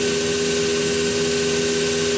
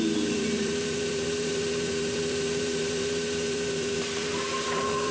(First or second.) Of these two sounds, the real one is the first